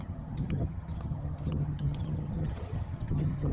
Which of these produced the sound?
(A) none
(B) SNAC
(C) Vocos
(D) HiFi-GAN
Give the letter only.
D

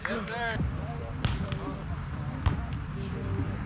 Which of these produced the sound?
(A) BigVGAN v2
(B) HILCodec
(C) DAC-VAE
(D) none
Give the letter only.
D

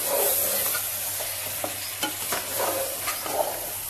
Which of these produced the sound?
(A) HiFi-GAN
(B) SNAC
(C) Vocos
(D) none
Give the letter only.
D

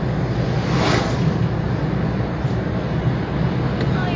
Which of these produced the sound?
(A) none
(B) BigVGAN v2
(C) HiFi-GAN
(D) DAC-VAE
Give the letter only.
A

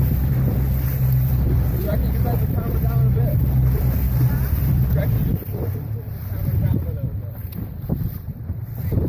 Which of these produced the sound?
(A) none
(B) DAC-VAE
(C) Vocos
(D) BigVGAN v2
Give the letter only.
D